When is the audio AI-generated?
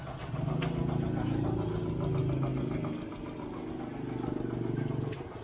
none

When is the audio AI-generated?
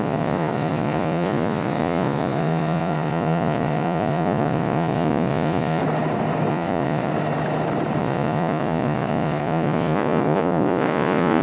0.0-5.8; 6.5-7.1; 8.0-11.4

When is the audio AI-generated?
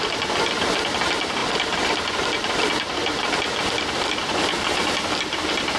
1.4-4.0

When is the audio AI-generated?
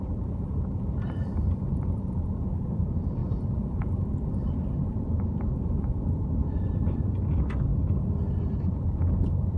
0.0-7.7; 8.3-9.6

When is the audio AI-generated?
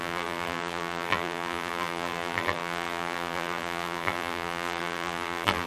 0.0-5.7